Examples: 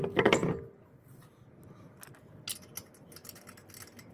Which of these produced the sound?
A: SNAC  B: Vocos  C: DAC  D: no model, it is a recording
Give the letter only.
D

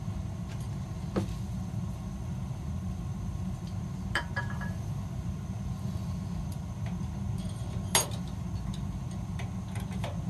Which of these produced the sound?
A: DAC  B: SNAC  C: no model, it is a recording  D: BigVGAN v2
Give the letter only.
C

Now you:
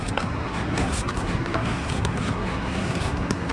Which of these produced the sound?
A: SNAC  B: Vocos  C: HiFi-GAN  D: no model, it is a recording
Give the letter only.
A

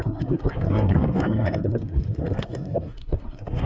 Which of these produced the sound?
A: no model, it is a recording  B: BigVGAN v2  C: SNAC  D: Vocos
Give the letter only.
C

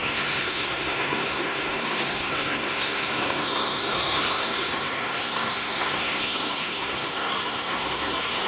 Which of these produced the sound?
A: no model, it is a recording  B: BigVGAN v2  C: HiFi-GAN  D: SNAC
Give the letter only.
D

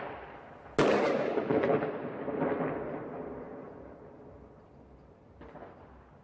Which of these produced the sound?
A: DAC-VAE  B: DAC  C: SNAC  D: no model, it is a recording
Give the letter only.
D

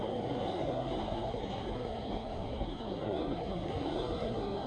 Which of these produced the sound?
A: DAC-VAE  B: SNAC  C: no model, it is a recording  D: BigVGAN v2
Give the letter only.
B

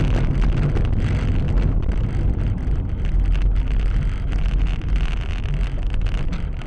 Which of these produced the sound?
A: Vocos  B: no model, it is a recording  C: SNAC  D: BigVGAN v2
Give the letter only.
B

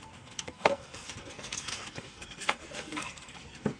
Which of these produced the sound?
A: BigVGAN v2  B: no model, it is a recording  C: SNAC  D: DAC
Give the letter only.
C